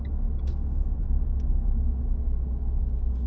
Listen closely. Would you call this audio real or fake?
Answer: real